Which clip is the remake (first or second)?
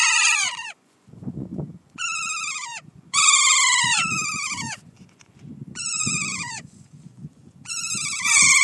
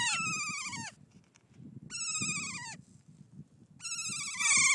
first